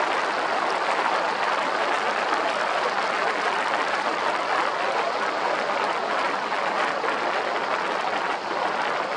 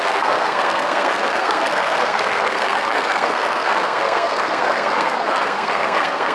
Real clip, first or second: first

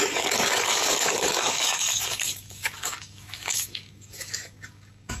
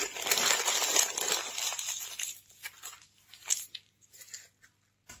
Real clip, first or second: second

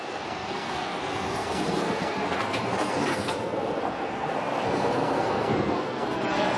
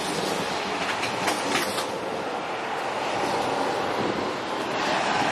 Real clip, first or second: second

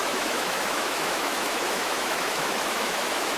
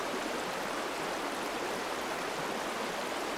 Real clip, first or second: second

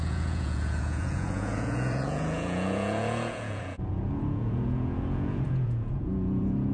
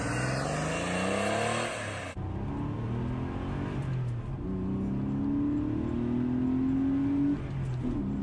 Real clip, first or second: second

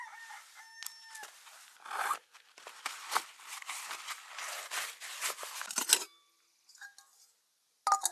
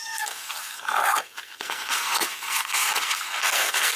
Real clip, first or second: first